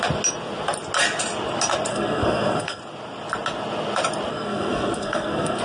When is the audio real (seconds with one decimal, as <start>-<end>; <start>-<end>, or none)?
0.0-1.9; 2.8-4.3